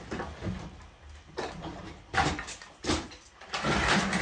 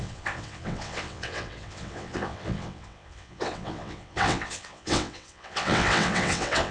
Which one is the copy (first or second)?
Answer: second